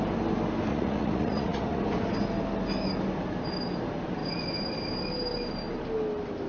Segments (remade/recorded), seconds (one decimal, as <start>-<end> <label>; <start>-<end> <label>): 0.0-0.7 recorded; 0.7-1.8 remade; 1.8-6.5 recorded

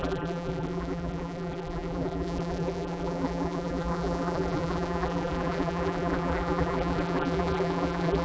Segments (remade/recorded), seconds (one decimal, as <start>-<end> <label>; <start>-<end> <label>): 0.0-8.2 remade

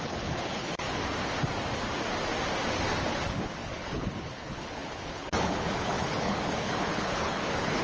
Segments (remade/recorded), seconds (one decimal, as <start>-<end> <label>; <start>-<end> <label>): 0.0-1.0 remade; 1.0-3.1 recorded; 3.1-7.8 remade

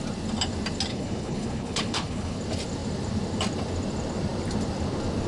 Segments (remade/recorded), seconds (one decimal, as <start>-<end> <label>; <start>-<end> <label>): 0.0-0.9 recorded; 0.9-2.4 remade; 2.4-5.3 recorded

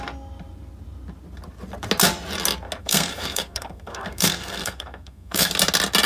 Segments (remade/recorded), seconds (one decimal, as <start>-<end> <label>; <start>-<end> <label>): 0.0-2.8 recorded; 2.8-5.5 remade; 5.5-6.1 recorded

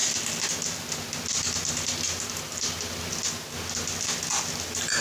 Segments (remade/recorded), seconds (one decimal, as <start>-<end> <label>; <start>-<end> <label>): 0.0-5.0 recorded